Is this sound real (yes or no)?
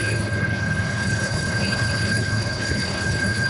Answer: no